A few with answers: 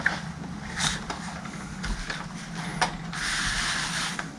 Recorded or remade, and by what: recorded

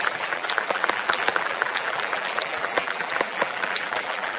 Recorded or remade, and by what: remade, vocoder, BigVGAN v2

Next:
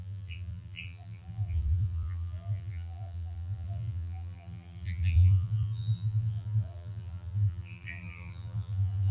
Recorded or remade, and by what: remade, vocoder, BigVGAN v2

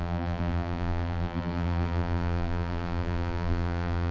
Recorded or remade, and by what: remade, vocoder, BigVGAN v2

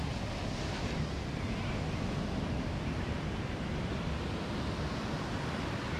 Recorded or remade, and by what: recorded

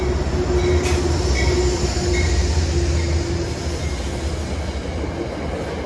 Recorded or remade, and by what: recorded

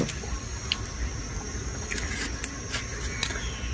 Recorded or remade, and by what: recorded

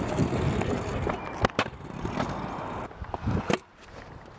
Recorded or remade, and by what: remade, vocoder, BigVGAN v2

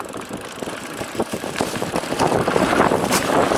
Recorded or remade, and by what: remade, vocoder, BigVGAN v2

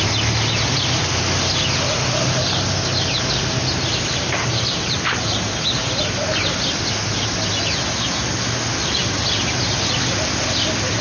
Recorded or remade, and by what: recorded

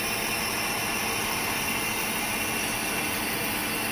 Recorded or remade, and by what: recorded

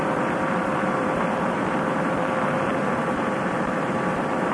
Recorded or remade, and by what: remade, vocoder, BigVGAN v2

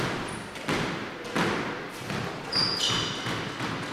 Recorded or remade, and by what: recorded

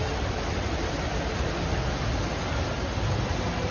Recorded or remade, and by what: remade, vocoder, BigVGAN v2